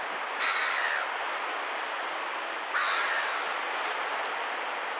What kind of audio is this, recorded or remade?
recorded